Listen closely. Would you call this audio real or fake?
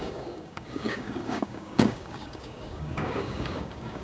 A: fake